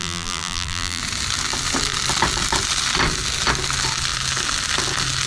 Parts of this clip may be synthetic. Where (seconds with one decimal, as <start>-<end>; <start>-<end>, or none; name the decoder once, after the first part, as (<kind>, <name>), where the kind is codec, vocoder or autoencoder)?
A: 0.0-1.0 (vocoder, BigVGAN v2)